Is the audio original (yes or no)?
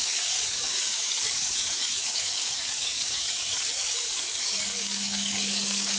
no